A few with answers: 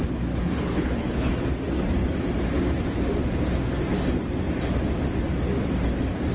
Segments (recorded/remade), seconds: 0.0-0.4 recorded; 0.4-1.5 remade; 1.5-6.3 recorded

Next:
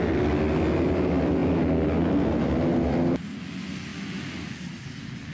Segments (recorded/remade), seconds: 0.0-5.3 recorded